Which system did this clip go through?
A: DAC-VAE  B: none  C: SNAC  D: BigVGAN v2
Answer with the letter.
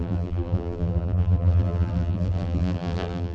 D